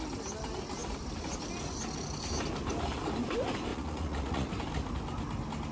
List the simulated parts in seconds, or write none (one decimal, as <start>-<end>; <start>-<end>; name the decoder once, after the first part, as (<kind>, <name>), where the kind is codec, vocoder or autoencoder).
3.7-4.5 (vocoder, Vocos)